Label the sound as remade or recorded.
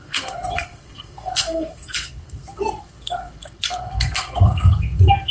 remade